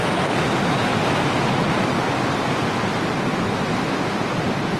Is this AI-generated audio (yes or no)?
no